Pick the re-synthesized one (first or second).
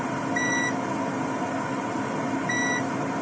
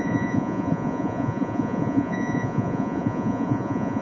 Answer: second